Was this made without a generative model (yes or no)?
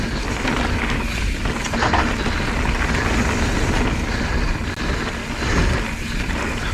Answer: yes